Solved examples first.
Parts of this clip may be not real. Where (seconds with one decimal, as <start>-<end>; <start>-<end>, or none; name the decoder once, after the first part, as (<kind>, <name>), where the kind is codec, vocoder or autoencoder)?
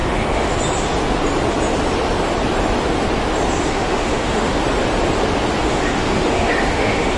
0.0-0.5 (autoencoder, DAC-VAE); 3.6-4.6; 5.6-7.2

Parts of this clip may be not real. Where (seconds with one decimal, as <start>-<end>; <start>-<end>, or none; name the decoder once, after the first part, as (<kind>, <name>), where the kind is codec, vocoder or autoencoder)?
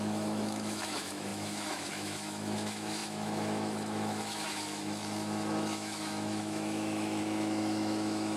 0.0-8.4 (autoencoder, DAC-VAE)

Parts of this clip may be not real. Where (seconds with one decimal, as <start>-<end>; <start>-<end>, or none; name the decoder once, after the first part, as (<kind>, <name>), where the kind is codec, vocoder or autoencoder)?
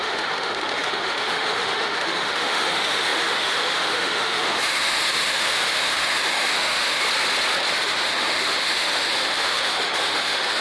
0.0-7.0 (autoencoder, DAC-VAE); 7.7-10.6